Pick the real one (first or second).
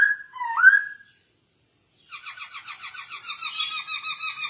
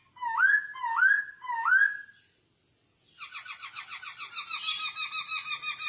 second